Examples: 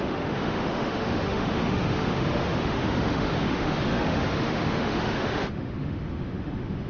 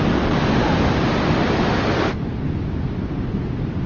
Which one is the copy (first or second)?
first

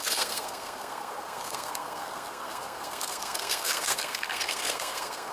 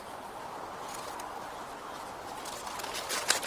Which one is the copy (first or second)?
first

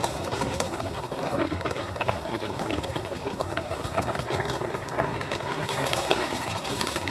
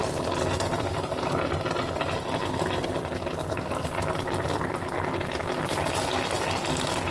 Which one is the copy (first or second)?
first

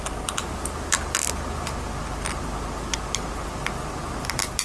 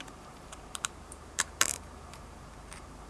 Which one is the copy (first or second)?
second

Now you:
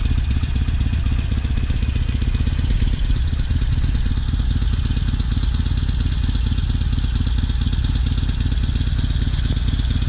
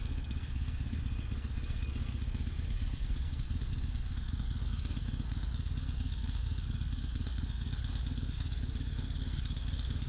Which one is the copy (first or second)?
second